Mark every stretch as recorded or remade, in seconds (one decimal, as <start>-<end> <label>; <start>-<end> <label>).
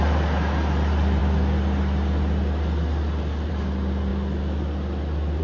0.0-5.4 recorded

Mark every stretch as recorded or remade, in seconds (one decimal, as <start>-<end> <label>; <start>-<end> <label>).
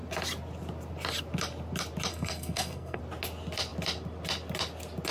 0.0-2.1 recorded; 2.1-3.0 remade; 3.0-5.1 recorded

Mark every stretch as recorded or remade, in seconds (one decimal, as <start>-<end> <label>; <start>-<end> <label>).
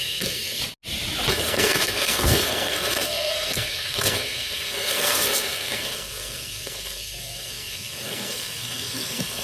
0.0-0.6 remade; 0.6-1.3 recorded; 1.3-9.4 remade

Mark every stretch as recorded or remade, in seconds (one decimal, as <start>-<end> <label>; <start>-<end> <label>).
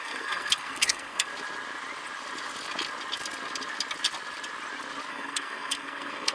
0.0-1.3 remade; 1.3-5.1 recorded; 5.1-6.3 remade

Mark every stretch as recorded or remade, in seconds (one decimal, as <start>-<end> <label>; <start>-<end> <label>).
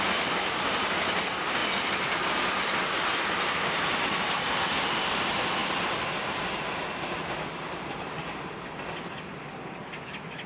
0.0-10.5 recorded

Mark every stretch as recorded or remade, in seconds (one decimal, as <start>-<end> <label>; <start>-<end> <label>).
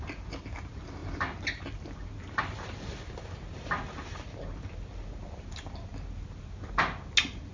0.0-7.5 recorded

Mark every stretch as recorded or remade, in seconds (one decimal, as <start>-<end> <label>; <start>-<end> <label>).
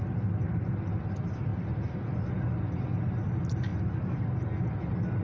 0.0-5.2 recorded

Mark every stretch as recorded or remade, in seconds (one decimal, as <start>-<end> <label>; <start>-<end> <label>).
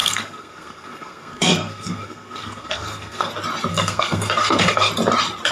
0.0-3.3 remade; 3.3-3.7 recorded; 3.7-4.9 remade; 4.9-5.5 recorded